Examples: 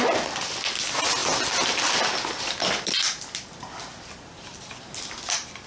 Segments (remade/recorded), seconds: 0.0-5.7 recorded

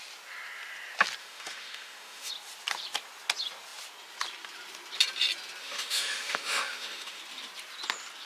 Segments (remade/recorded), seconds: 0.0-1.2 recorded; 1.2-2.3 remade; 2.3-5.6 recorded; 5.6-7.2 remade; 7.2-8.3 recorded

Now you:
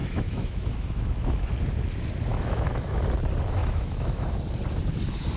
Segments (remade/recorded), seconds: 0.0-1.5 remade; 1.5-2.3 recorded; 2.3-3.0 remade; 3.0-3.6 recorded; 3.6-4.4 remade; 4.4-5.4 recorded

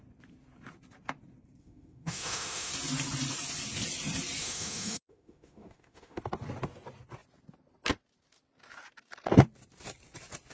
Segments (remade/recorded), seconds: 0.0-1.6 recorded; 1.6-2.7 remade; 2.7-4.4 recorded; 4.4-6.2 remade; 6.2-10.5 recorded

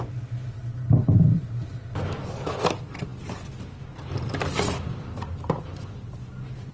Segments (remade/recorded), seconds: 0.0-6.7 recorded